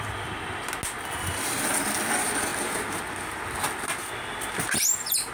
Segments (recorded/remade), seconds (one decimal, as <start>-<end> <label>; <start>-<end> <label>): 0.0-5.3 recorded